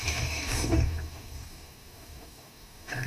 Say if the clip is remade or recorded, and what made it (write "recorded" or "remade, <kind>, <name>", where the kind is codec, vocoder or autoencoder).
remade, codec, DAC